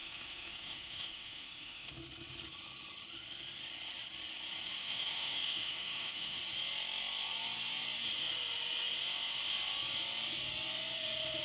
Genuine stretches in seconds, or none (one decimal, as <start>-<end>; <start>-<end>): 1.9-4.8; 6.4-11.4